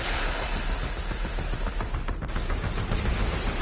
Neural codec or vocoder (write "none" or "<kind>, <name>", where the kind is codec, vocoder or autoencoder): none